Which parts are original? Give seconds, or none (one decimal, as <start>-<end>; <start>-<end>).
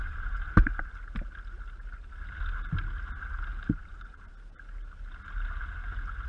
0.7-3.5; 4.3-6.3